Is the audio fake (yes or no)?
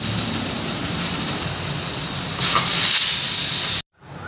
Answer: no